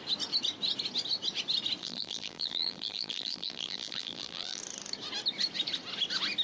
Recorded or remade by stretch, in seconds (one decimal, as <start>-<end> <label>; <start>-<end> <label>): 0.0-1.8 recorded; 1.8-4.6 remade; 4.6-6.4 recorded